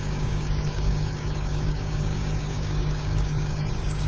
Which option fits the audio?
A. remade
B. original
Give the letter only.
A